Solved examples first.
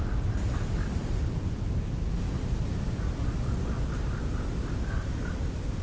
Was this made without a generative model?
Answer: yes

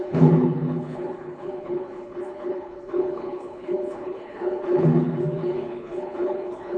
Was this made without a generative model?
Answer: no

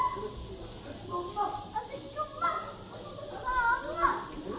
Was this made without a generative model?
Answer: yes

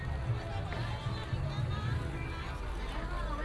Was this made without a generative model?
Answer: yes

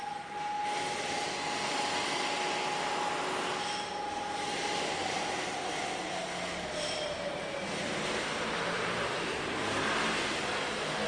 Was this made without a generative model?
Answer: yes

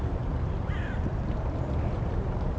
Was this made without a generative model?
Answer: yes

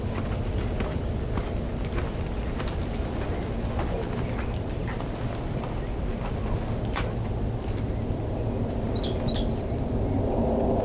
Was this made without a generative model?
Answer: yes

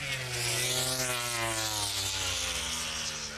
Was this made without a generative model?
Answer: yes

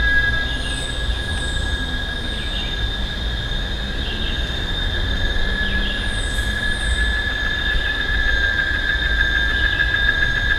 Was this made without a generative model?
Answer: yes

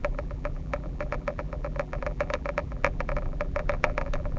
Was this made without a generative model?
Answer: no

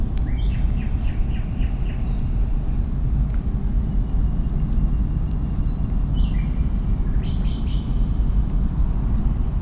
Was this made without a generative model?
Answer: yes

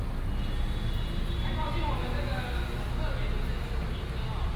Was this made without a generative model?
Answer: yes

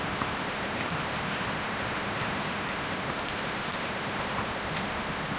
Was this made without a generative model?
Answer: no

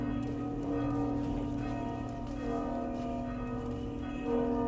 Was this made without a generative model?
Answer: yes